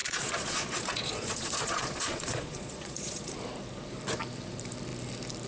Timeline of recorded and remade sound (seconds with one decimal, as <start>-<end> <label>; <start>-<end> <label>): 0.0-3.3 remade; 3.3-5.5 recorded